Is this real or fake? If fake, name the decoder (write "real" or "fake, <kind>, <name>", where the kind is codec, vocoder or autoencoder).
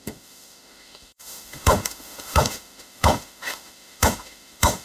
fake, autoencoder, DAC-VAE